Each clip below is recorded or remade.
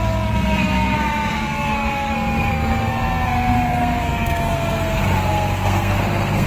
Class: remade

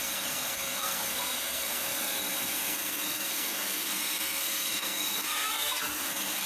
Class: remade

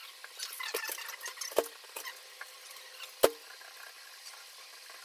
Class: recorded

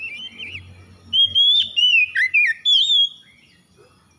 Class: recorded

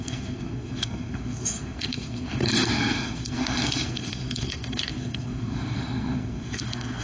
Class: remade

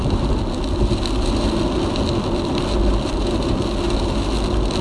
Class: recorded